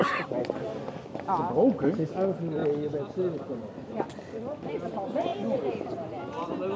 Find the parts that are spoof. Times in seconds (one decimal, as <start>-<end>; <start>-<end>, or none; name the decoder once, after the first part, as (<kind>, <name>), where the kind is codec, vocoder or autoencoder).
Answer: none